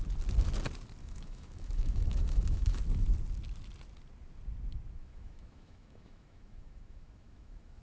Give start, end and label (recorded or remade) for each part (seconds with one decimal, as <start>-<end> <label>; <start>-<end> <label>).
0.0-1.0 recorded; 1.0-2.8 remade; 2.8-5.0 recorded; 5.0-7.8 remade